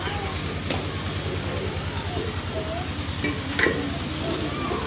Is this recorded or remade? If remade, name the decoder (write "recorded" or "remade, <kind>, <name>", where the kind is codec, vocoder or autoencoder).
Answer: recorded